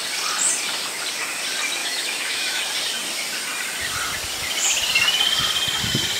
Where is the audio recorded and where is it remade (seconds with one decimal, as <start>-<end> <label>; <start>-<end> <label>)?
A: 0.0-1.8 recorded; 1.8-2.6 remade; 2.6-6.2 recorded